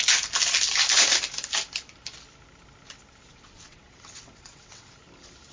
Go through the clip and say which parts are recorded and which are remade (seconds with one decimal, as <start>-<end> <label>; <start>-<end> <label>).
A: 0.0-3.3 recorded; 3.3-4.9 remade; 4.9-5.5 recorded